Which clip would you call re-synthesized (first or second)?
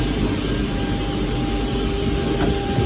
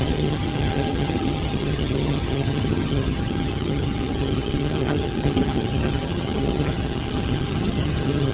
second